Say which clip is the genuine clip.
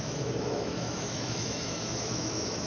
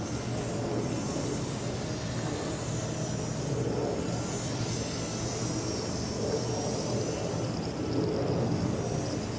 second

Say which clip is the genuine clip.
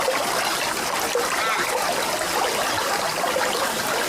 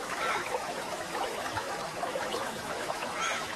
first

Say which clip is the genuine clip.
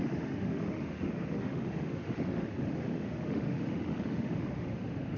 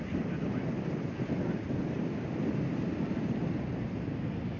second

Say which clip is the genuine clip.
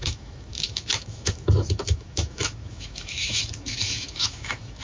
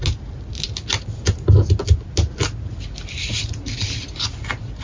second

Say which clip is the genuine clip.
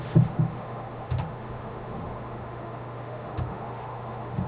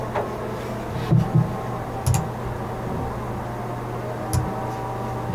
second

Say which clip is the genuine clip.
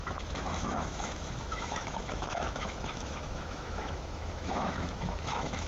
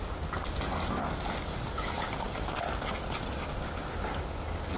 second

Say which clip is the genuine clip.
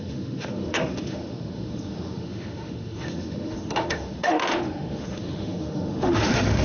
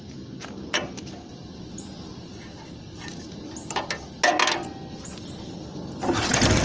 second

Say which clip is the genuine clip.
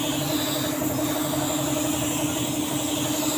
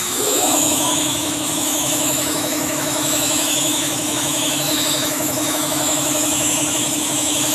first